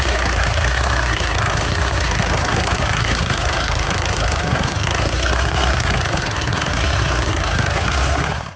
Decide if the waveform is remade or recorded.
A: remade